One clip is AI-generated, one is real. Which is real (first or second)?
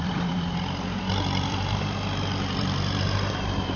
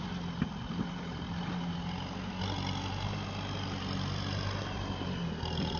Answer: second